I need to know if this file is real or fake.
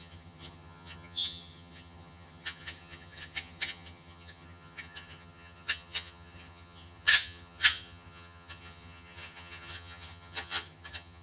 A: fake